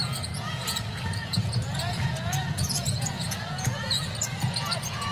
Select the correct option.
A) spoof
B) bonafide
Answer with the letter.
A